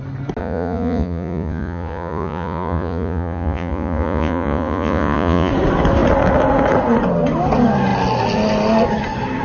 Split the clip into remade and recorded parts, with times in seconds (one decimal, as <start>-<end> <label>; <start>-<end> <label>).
0.0-0.4 recorded; 0.4-5.5 remade; 5.5-9.4 recorded